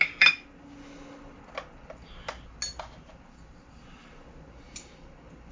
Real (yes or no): yes